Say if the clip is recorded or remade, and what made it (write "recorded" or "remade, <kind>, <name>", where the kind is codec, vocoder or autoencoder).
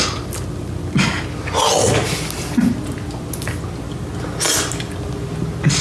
recorded